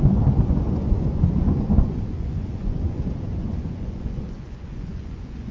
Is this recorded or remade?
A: remade